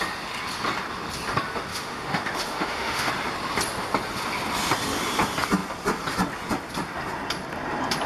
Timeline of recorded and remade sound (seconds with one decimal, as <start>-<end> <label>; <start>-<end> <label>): 0.0-1.7 recorded; 1.7-3.1 remade; 3.1-8.1 recorded

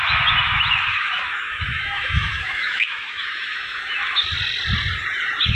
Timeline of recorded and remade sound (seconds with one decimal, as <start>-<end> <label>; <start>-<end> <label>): 0.0-0.9 recorded; 0.9-4.0 remade; 4.0-5.6 recorded

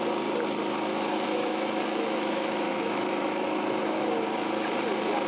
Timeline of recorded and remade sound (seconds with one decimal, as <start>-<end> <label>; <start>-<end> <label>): 0.0-0.9 recorded; 0.9-4.1 remade; 4.1-5.3 recorded

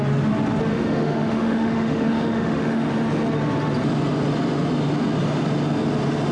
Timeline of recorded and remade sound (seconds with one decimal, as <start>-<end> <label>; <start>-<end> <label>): 0.0-0.7 recorded; 0.7-2.9 remade; 2.9-6.3 recorded

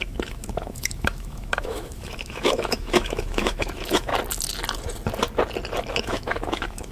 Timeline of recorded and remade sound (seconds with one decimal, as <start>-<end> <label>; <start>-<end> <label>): 0.0-4.1 remade; 4.1-5.9 recorded; 5.9-6.9 remade